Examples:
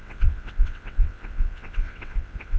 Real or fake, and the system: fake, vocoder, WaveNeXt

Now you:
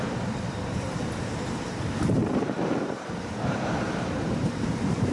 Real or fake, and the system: fake, vocoder, BigVGAN v2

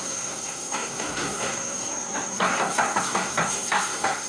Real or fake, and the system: fake, codec, SNAC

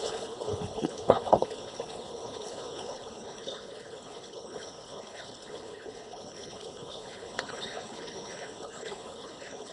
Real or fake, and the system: fake, codec, HILCodec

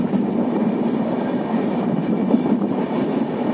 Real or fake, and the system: real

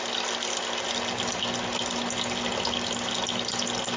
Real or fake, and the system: real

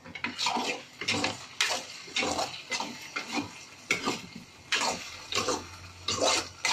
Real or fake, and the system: real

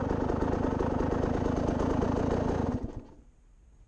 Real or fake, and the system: real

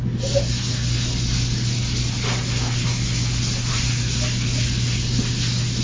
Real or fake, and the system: real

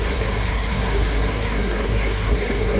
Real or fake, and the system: fake, codec, SNAC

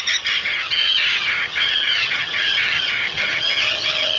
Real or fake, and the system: fake, vocoder, HiFi-GAN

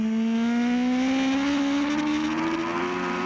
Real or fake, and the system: real